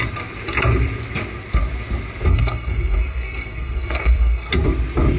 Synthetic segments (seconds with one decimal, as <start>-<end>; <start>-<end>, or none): 2.3-4.5